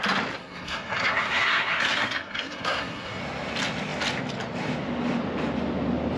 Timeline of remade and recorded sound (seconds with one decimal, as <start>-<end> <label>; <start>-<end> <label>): 0.0-0.4 recorded; 0.4-3.2 remade; 3.2-6.2 recorded